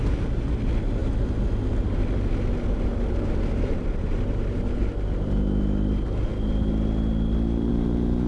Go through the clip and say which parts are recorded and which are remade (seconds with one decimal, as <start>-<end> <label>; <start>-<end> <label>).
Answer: 0.0-8.3 recorded